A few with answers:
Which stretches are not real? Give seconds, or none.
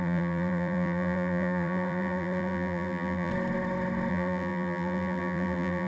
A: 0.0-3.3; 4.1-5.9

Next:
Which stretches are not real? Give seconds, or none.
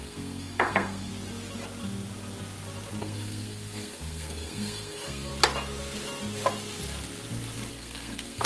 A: 0.0-1.1; 3.0-5.3; 7.7-8.5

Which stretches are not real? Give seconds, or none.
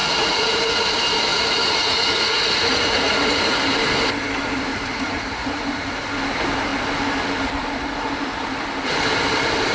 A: 0.0-0.9; 1.3-3.6; 4.7-6.0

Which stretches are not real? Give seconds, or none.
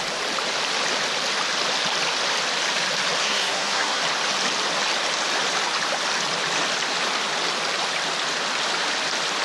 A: 3.2-4.0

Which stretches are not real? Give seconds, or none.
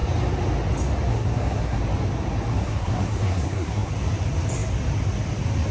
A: 1.1-1.8; 2.5-3.9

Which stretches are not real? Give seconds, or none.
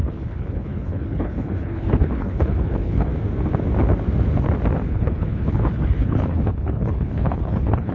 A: 0.0-3.1; 4.9-7.9